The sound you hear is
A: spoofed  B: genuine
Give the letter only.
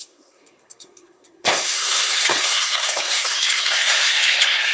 A